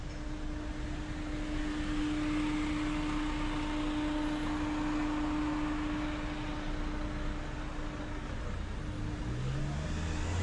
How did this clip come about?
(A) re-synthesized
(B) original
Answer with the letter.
B